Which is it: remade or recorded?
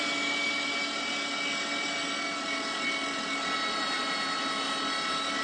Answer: recorded